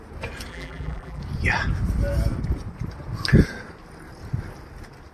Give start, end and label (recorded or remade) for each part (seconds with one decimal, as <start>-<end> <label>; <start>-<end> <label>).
0.0-0.5 recorded; 0.5-1.2 remade; 1.2-5.1 recorded